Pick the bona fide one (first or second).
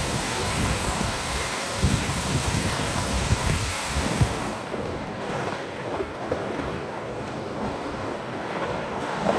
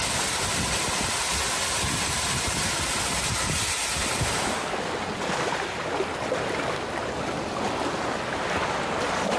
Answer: second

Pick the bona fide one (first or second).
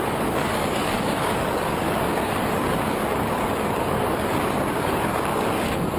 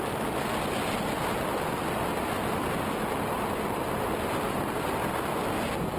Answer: second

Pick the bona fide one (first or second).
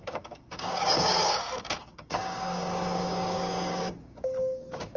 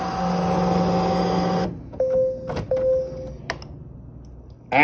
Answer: second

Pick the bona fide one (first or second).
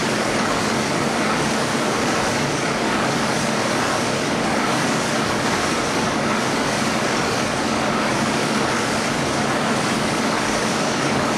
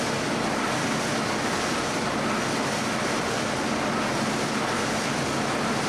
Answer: second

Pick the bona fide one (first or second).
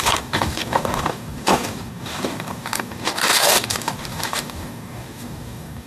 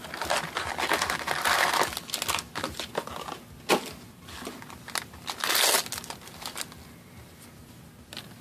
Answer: second